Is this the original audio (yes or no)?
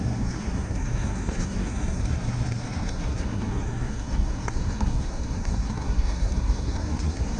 no